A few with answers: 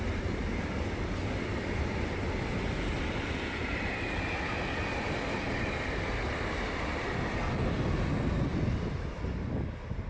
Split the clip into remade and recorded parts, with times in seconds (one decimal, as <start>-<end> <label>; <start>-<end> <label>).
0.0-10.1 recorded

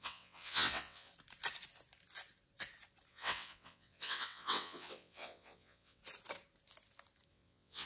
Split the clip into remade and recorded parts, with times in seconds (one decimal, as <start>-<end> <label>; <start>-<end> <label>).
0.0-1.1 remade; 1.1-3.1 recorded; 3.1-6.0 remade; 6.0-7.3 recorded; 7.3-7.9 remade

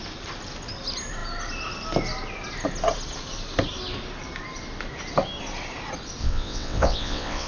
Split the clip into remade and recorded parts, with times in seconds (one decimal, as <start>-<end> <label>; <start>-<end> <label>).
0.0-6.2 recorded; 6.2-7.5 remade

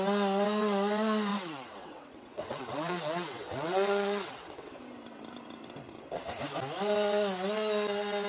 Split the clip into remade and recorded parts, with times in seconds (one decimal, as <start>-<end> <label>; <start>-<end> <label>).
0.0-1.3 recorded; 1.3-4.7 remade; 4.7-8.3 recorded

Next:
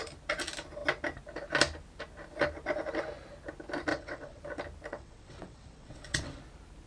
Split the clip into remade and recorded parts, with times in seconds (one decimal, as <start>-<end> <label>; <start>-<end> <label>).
0.0-3.9 recorded; 3.9-4.4 remade; 4.4-4.9 recorded; 4.9-6.4 remade; 6.4-6.9 recorded